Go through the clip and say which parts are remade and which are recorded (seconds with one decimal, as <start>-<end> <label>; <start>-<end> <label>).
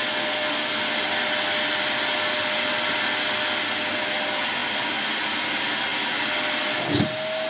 0.0-7.5 recorded